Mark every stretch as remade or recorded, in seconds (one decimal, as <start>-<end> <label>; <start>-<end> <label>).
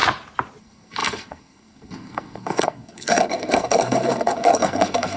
0.0-0.6 recorded; 0.6-5.2 remade